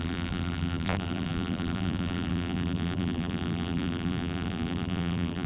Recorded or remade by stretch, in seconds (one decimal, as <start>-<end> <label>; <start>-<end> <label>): 0.0-5.5 remade